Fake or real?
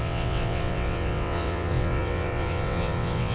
fake